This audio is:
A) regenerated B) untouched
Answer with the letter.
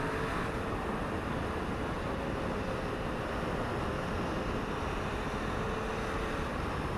B